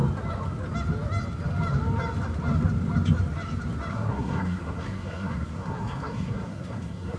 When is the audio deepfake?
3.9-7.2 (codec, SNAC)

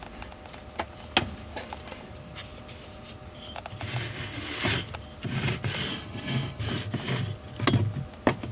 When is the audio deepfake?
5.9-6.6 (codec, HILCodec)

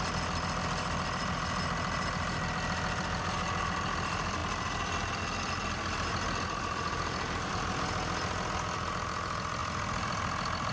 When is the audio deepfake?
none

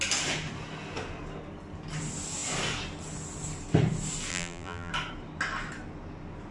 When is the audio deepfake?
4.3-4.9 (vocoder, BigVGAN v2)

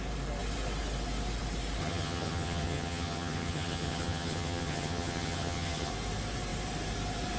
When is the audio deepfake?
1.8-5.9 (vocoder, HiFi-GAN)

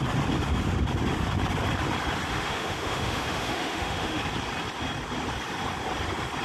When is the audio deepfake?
2.3-4.2 (autoencoder, DAC-VAE)

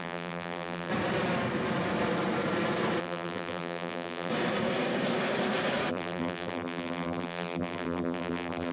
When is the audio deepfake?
0.0-0.9 (vocoder, BigVGAN v2); 3.0-4.3; 5.9-8.7

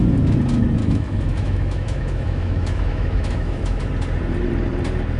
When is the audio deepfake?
0.8-3.9 (autoencoder, DAC-VAE)